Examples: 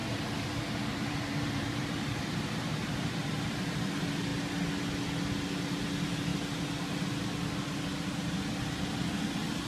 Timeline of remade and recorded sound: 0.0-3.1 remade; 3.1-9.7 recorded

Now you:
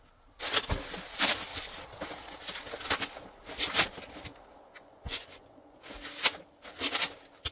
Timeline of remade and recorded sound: 0.0-4.7 recorded; 4.7-5.8 remade; 5.8-7.5 recorded

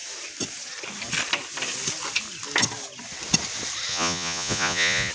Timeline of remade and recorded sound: 0.0-3.9 recorded; 3.9-5.1 remade

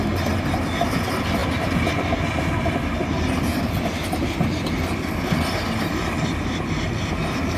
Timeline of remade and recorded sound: 0.0-7.6 recorded

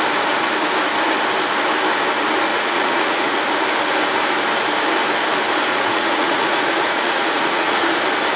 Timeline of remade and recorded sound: 0.0-2.5 recorded; 2.5-3.4 remade; 3.4-5.7 recorded; 5.7-7.9 remade; 7.9-8.4 recorded